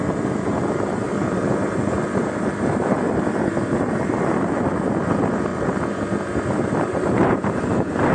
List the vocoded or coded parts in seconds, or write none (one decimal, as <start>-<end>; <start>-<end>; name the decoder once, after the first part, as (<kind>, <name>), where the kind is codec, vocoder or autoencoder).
0.0-8.1 (vocoder, BigVGAN v2)